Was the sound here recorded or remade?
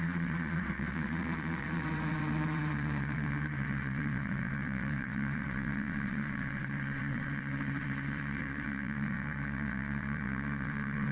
remade